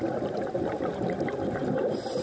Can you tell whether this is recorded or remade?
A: recorded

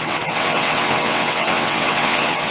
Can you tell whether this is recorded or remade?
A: remade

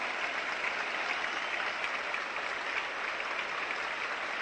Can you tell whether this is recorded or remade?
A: recorded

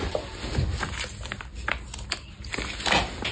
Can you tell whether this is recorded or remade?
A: recorded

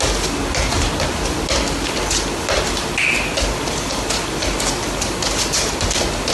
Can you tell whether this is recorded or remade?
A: recorded